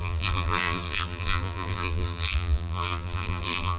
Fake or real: fake